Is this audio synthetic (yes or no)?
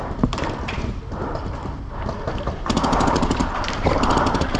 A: yes